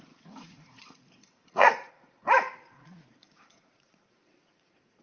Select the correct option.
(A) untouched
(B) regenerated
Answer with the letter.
B